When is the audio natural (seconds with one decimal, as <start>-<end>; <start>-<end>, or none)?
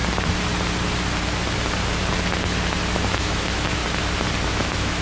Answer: 0.0-3.0; 3.8-4.5